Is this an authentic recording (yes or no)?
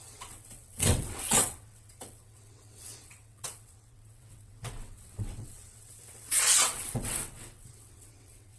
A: no